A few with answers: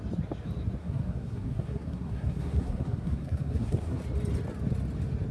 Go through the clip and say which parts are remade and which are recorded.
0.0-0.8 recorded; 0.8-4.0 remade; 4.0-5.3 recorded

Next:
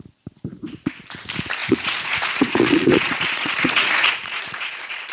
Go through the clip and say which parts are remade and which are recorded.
0.0-1.6 recorded; 1.6-5.1 remade

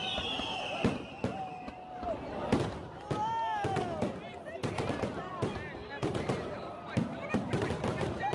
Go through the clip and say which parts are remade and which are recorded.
0.0-5.8 recorded; 5.8-6.7 remade; 6.7-8.3 recorded

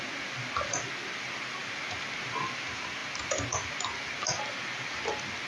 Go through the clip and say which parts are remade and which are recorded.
0.0-5.5 recorded

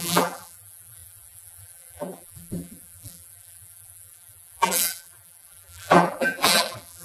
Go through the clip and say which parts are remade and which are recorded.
0.0-7.0 remade

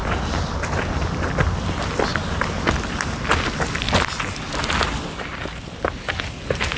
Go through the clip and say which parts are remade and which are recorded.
0.0-5.3 recorded; 5.3-6.1 remade; 6.1-6.8 recorded